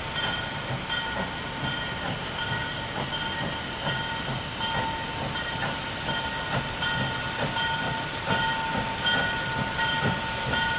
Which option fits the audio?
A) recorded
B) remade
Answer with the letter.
A